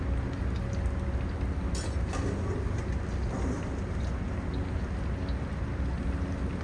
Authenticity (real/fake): real